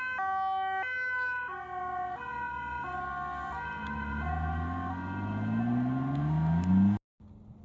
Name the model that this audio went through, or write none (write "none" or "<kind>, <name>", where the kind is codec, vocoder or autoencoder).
none